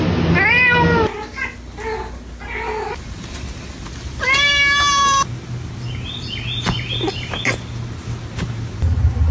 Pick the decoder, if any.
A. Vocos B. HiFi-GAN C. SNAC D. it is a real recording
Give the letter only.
D